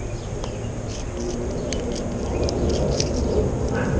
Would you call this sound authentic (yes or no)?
yes